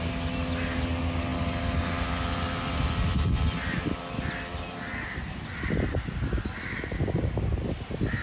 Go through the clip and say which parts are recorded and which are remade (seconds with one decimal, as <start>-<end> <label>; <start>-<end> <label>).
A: 0.0-4.9 recorded; 4.9-6.3 remade; 6.3-8.2 recorded